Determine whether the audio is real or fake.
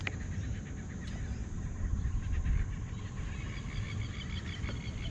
real